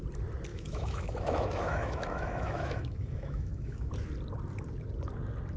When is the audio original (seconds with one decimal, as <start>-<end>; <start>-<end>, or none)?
0.0-0.5; 3.9-5.6